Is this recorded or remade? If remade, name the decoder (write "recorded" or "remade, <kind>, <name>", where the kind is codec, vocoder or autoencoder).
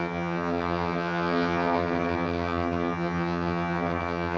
remade, vocoder, HiFi-GAN